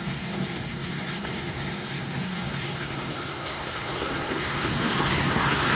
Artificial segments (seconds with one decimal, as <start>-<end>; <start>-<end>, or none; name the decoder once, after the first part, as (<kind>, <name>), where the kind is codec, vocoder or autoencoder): 0.0-5.7 (codec, SNAC)